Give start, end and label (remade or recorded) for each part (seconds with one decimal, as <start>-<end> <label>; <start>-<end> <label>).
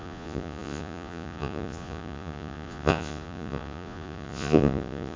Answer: 0.0-5.2 remade